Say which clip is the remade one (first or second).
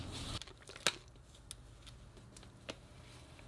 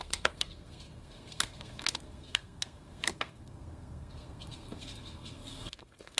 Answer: second